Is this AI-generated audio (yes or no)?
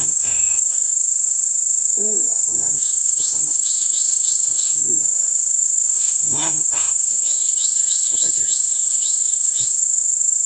yes